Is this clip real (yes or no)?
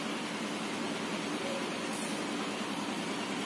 yes